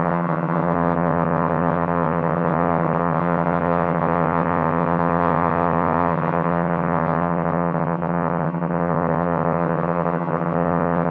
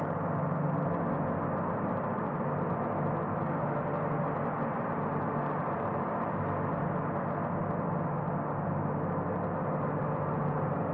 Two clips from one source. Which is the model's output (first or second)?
first